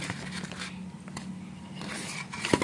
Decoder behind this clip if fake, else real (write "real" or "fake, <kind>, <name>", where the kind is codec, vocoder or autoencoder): real